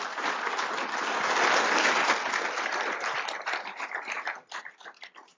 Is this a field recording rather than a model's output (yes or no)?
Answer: yes